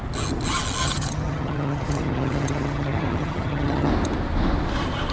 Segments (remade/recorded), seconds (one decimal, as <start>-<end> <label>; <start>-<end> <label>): 0.0-0.8 recorded; 0.8-3.9 remade; 3.9-5.1 recorded